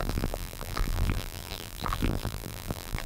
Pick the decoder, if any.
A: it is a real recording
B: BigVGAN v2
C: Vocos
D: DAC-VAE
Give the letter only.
B